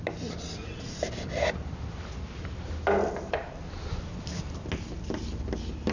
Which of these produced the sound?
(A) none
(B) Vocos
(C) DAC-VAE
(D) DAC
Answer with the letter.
A